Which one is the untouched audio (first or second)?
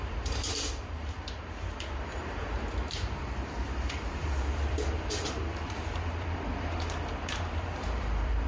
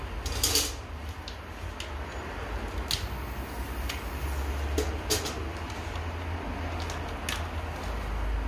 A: second